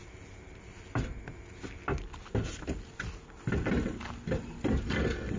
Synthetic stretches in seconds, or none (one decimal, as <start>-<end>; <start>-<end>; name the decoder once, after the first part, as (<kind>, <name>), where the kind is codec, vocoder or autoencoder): 0.0-1.6 (vocoder, BigVGAN v2)